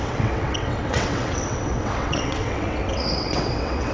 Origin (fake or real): fake